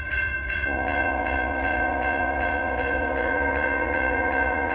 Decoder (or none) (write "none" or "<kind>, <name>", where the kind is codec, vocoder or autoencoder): vocoder, Vocos